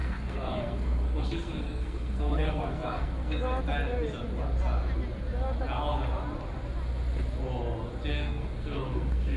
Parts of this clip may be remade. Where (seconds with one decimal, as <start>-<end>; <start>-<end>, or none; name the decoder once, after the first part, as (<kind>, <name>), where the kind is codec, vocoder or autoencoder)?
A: 0.0-3.6 (codec, SNAC); 8.1-9.4